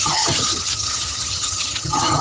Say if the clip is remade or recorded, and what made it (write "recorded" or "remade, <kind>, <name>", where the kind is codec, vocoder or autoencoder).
remade, vocoder, HiFi-GAN